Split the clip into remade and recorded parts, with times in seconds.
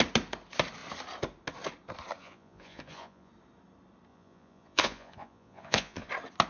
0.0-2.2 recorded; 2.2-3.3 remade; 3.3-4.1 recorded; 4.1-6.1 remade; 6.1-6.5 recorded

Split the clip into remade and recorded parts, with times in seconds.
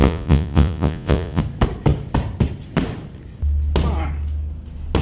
0.0-1.4 remade; 1.4-5.0 recorded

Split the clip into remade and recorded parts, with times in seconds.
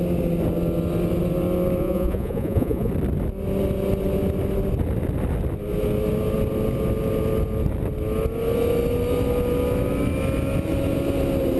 0.0-1.8 recorded; 1.8-2.9 remade; 2.9-11.6 recorded